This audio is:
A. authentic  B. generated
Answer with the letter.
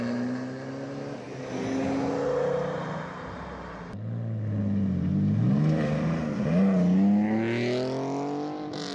A